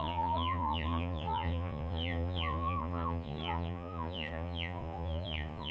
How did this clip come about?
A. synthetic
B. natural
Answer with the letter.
A